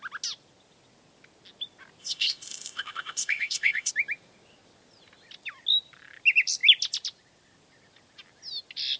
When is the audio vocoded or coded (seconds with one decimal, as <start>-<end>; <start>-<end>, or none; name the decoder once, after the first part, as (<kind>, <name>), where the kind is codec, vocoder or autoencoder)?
2.0-3.9 (codec, ZipCodec)